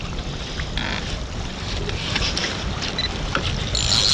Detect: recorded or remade recorded